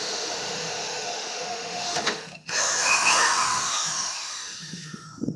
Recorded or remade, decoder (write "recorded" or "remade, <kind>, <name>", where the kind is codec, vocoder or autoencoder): remade, autoencoder, DAC-VAE